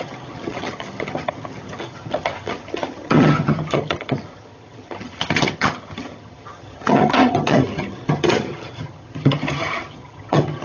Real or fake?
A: fake